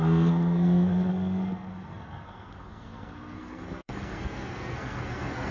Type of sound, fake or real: fake